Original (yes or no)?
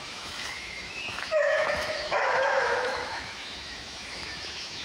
no